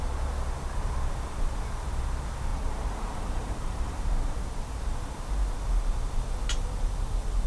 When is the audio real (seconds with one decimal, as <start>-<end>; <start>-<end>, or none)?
0.0-2.5; 4.8-7.5